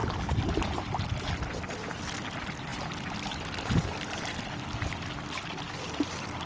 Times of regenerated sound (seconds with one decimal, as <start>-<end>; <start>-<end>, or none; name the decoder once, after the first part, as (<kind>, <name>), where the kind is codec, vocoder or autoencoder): none